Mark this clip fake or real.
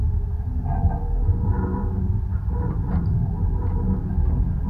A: fake